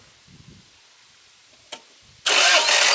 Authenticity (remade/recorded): recorded